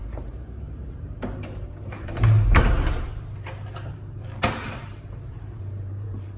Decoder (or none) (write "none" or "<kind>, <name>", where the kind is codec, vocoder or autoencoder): vocoder, BigVGAN v2